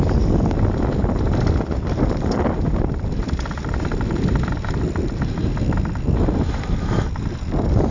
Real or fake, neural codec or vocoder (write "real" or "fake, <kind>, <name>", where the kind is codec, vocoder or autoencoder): real